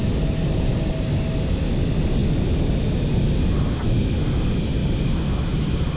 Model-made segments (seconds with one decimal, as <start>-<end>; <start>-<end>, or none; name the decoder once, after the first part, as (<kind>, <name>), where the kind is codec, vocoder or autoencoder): none